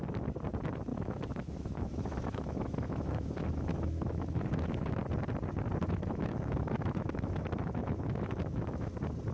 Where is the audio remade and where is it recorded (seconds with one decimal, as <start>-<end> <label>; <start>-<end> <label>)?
0.0-0.9 recorded; 0.9-5.0 remade; 5.0-5.8 recorded; 5.8-8.9 remade; 8.9-9.3 recorded